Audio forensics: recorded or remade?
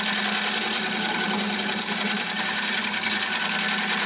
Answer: recorded